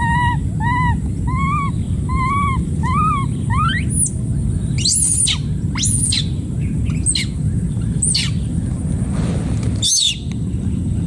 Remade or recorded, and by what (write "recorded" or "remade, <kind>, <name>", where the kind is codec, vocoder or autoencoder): recorded